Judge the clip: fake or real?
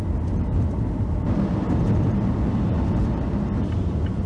real